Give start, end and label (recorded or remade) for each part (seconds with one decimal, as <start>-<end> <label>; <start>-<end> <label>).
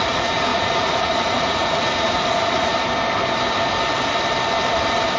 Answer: 0.0-2.7 remade; 2.7-5.2 recorded